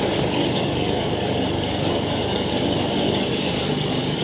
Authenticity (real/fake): fake